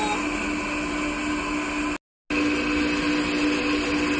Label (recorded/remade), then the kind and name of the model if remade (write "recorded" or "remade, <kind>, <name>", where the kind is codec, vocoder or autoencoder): recorded